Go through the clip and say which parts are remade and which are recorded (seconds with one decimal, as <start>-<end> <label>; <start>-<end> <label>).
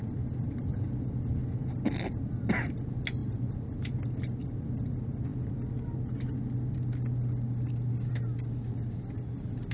0.0-9.7 recorded